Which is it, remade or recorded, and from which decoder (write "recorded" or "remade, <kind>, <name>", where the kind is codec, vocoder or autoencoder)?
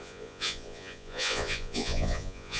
remade, vocoder, Vocos